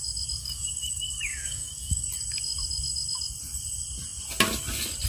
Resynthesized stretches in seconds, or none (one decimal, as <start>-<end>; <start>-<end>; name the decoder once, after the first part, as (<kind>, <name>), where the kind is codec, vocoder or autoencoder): 0.4-2.1 (codec, DAC)